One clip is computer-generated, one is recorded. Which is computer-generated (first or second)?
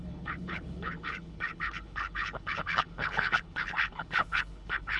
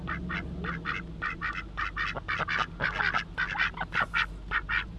first